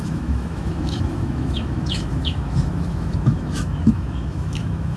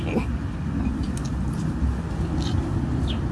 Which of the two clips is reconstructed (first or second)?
first